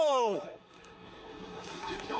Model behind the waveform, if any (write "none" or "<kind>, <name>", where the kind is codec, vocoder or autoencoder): codec, SNAC